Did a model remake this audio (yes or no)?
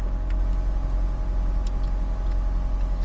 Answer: no